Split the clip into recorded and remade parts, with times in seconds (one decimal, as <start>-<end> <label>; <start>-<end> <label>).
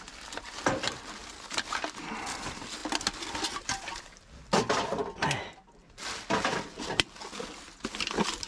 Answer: 0.0-1.2 remade; 1.2-2.4 recorded; 2.4-2.8 remade; 2.8-3.5 recorded; 3.5-5.0 remade; 5.0-7.4 recorded; 7.4-8.5 remade